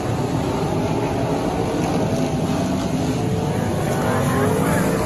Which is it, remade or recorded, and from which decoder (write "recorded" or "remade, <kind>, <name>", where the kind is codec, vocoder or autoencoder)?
recorded